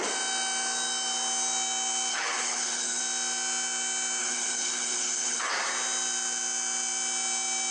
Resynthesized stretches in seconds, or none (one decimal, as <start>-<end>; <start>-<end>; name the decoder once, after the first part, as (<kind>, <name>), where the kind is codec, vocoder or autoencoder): 2.1-3.0 (codec, HILCodec); 4.2-5.5